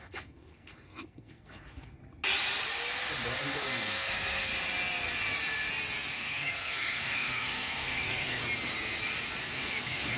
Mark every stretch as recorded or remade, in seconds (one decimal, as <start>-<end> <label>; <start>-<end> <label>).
0.0-2.0 remade; 2.0-3.5 recorded; 3.5-4.5 remade; 4.5-6.1 recorded; 6.1-8.4 remade; 8.4-9.4 recorded; 9.4-10.2 remade

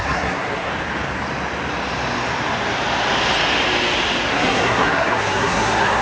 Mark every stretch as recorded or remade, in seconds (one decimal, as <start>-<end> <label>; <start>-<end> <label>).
0.0-0.7 remade; 0.7-4.3 recorded; 4.3-6.0 remade

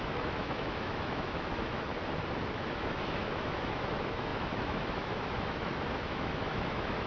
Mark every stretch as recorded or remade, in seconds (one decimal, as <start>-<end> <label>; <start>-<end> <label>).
0.0-1.9 remade; 1.9-2.5 recorded; 2.5-7.1 remade

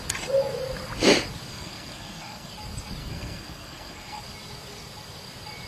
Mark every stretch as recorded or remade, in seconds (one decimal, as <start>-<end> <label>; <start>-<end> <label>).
0.0-1.5 recorded; 1.5-2.5 remade; 2.5-3.0 recorded; 3.0-4.2 remade; 4.2-5.7 recorded

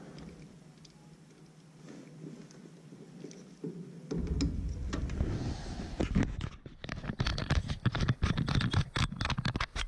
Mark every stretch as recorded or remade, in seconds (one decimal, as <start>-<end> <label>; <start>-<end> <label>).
0.0-2.4 recorded; 2.4-4.1 remade; 4.1-7.3 recorded; 7.3-8.8 remade; 8.8-9.9 recorded

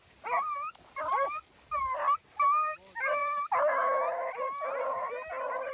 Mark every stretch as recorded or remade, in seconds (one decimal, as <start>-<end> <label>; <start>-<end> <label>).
0.0-5.7 recorded

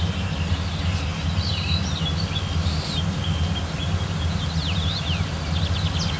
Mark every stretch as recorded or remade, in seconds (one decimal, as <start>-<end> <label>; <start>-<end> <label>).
0.0-6.2 recorded

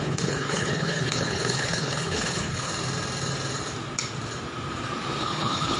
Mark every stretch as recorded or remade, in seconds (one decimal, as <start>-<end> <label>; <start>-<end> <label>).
0.0-2.7 remade; 2.7-5.2 recorded; 5.2-5.8 remade